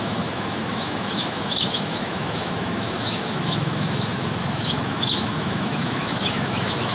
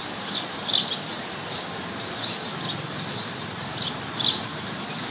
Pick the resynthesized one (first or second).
first